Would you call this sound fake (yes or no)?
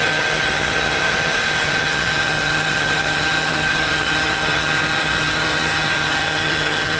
yes